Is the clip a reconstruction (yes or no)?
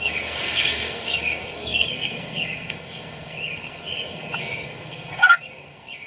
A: yes